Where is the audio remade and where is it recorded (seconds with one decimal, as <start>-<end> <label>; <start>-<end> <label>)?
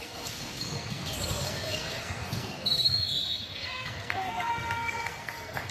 0.0-5.7 remade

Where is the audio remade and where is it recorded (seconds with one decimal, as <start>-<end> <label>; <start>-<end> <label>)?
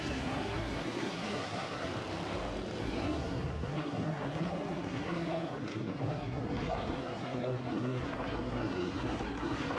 0.0-1.9 remade; 1.9-2.8 recorded; 2.8-9.8 remade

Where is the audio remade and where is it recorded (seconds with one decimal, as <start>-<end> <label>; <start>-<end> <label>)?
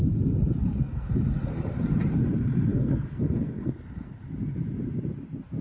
0.0-0.6 recorded; 0.6-1.1 remade; 1.1-2.7 recorded; 2.7-4.3 remade; 4.3-5.6 recorded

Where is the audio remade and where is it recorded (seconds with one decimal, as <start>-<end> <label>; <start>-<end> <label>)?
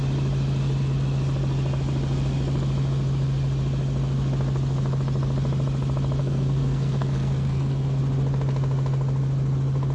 0.0-6.2 recorded; 6.2-8.0 remade; 8.0-9.9 recorded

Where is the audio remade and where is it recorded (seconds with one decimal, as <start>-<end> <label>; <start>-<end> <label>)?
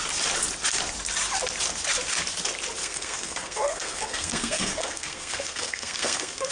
0.0-2.8 recorded; 2.8-6.5 remade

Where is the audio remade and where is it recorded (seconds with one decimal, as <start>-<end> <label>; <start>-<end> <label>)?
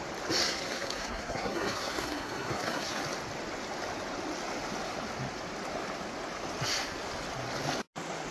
0.0-0.4 recorded; 0.4-3.0 remade; 3.0-8.3 recorded